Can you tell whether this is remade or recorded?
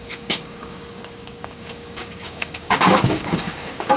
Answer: remade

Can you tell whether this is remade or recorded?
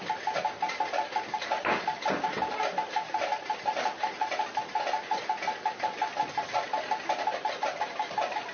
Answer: recorded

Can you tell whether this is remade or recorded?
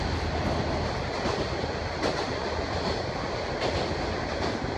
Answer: recorded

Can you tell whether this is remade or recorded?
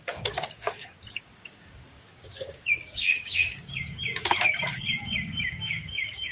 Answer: remade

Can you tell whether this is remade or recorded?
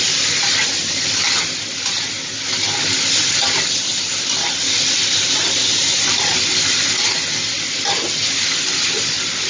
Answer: recorded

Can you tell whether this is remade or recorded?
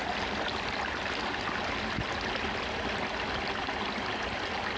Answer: recorded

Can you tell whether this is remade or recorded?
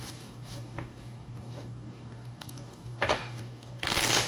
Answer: remade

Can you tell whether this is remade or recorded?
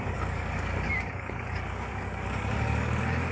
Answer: remade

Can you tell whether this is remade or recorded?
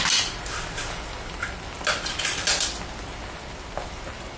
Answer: recorded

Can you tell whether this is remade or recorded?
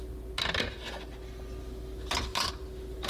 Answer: recorded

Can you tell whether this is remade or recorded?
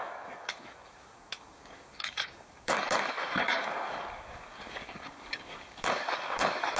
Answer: remade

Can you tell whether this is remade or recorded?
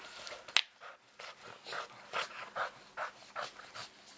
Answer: recorded